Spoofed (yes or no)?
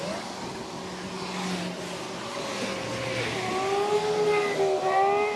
no